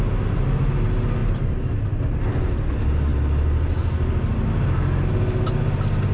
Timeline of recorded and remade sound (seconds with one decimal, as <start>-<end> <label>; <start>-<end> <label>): 0.0-6.1 recorded